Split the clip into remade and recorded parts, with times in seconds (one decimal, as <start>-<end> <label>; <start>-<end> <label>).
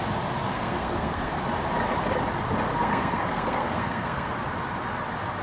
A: 0.0-0.5 recorded; 0.5-1.3 remade; 1.3-2.7 recorded; 2.7-4.3 remade; 4.3-5.4 recorded